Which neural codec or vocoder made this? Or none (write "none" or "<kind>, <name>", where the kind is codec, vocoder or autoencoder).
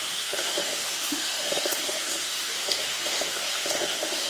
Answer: autoencoder, DAC-VAE